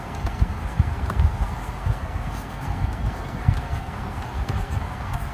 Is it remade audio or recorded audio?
remade